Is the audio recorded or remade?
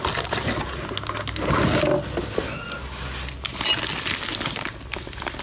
recorded